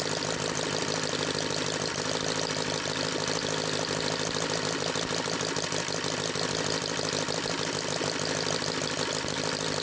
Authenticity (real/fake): real